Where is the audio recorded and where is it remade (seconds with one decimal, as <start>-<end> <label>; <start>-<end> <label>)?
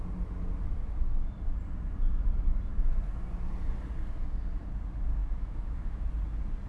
0.0-5.2 recorded; 5.2-6.1 remade; 6.1-6.7 recorded